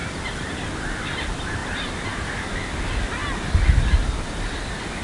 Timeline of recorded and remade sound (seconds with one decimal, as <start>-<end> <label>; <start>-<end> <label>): 0.0-1.6 recorded; 1.6-2.5 remade; 2.5-5.0 recorded